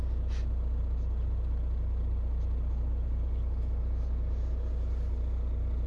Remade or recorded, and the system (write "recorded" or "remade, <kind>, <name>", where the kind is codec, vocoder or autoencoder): recorded